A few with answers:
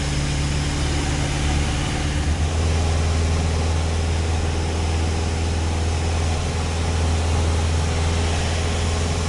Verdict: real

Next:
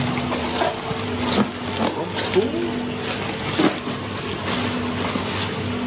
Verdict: real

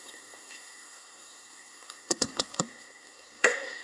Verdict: fake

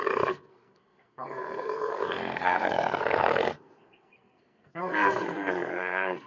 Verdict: fake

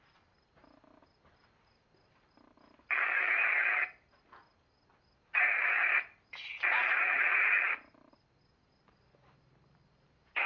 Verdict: real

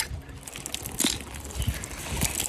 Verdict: real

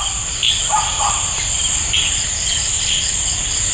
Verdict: real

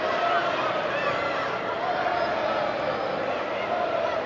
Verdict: real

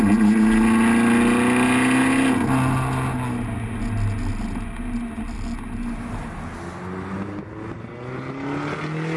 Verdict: real